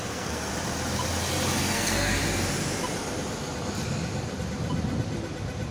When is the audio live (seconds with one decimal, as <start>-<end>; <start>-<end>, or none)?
0.5-1.6; 2.2-5.7